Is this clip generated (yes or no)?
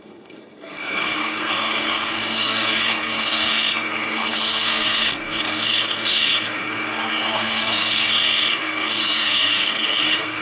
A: yes